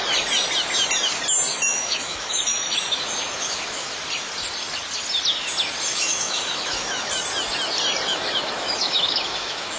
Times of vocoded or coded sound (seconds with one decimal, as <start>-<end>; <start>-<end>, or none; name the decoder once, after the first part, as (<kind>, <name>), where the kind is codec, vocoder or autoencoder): 1.5-3.9 (autoencoder, DAC-VAE); 5.9-7.1; 8.1-9.8